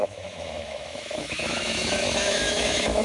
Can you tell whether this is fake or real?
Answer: fake